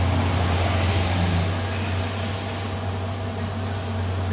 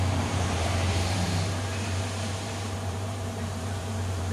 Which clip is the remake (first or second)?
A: second